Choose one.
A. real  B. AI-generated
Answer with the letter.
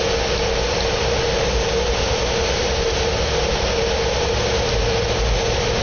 A